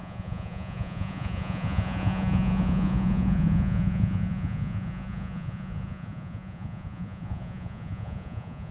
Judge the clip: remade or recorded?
remade